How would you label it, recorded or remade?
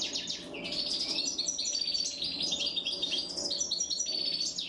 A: recorded